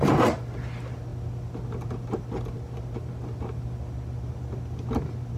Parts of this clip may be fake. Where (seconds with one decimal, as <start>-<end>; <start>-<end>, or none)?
none